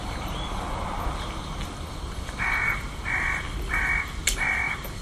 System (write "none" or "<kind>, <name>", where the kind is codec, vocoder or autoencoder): none